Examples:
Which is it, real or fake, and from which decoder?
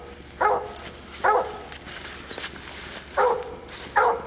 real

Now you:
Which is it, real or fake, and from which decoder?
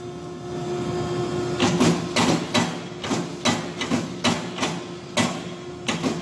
real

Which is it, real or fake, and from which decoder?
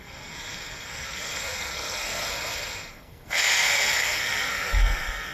fake, codec, SNAC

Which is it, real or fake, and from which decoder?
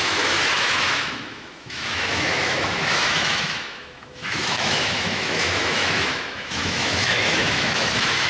fake, autoencoder, DAC-VAE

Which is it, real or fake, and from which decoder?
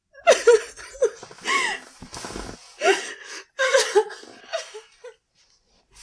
real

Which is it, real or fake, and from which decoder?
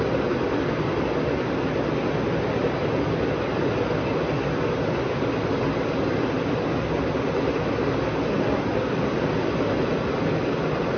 real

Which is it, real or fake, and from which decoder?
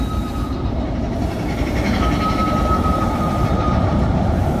fake, vocoder, BigVGAN v2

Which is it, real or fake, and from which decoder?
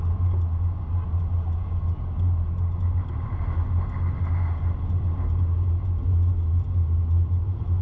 real